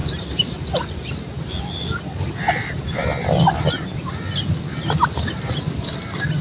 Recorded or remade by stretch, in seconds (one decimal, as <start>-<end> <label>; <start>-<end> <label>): 0.0-6.4 recorded

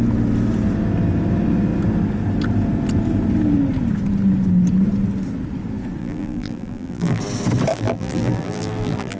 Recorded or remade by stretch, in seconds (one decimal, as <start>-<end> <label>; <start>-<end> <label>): 0.0-6.0 recorded; 6.0-7.2 remade; 7.2-7.7 recorded; 7.7-9.2 remade

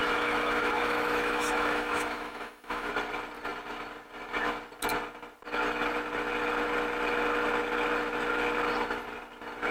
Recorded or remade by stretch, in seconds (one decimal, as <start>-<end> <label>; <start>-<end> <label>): 0.0-2.9 remade; 2.9-9.7 recorded

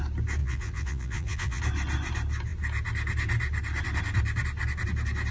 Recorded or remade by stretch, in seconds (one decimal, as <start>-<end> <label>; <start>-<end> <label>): 0.0-0.4 recorded; 0.4-1.6 remade; 1.6-5.3 recorded

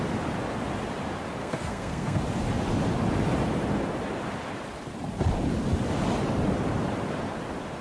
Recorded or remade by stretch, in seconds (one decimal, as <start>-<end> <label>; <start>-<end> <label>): 0.0-1.4 recorded; 1.4-2.2 remade; 2.2-7.8 recorded

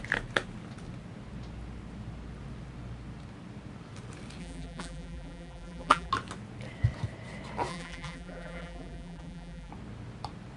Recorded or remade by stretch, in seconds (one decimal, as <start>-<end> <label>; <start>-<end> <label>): 0.0-4.4 recorded; 4.4-6.1 remade; 6.1-7.7 recorded; 7.7-9.7 remade; 9.7-10.6 recorded

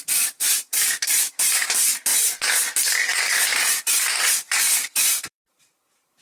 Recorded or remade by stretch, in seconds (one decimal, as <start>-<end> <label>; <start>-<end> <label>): 0.0-2.1 remade; 2.1-3.6 recorded; 3.6-6.2 remade